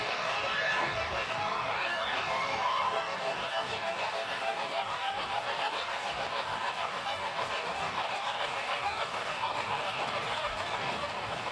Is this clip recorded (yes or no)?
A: no